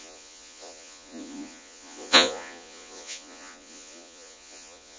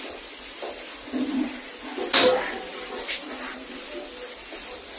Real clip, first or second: second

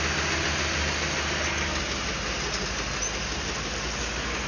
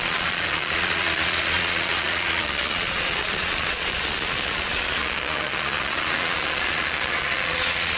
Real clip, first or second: first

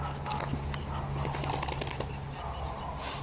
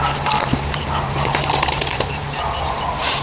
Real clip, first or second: first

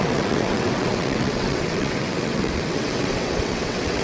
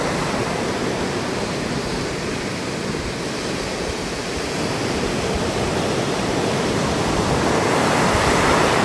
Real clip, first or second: second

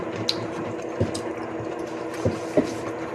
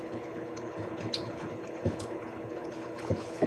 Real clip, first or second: first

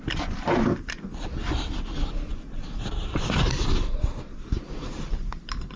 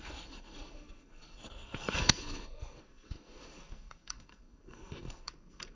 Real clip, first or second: first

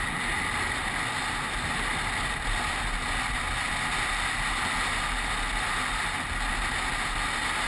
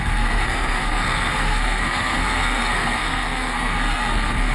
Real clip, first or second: first